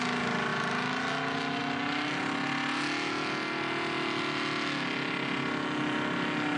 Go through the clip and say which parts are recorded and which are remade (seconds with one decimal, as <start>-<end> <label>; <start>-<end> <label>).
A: 0.0-6.6 recorded